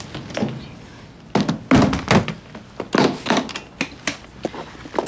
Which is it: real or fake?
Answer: real